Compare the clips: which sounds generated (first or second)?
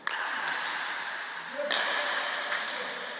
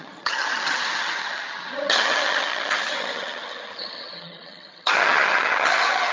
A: second